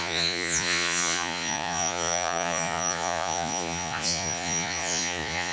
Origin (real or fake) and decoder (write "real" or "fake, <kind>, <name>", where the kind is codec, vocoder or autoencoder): fake, vocoder, Vocos